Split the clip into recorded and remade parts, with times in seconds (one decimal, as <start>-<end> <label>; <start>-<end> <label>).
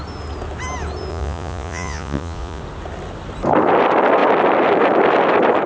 0.0-1.1 recorded; 1.1-2.6 remade; 2.6-5.7 recorded